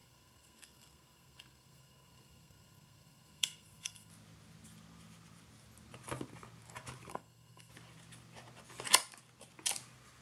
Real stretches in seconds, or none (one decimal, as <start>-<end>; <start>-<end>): 4.1-7.1; 7.7-10.2